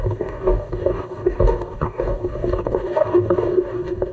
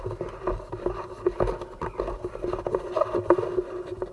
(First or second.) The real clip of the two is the second